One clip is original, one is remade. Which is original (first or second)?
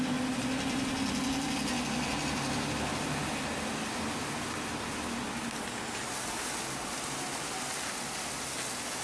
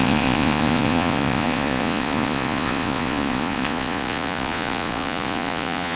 first